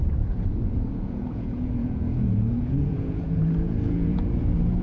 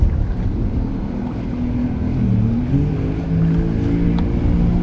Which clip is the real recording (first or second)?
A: second